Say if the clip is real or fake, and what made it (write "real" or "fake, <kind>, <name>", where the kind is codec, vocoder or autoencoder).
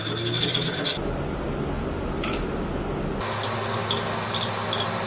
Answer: real